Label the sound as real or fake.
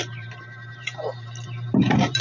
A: fake